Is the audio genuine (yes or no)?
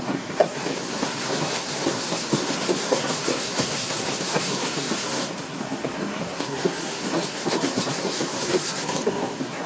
no